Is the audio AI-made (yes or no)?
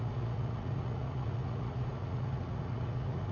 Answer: yes